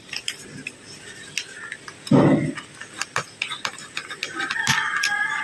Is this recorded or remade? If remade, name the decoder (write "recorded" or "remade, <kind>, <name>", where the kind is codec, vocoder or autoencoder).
recorded